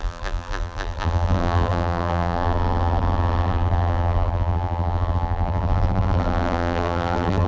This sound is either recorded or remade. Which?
remade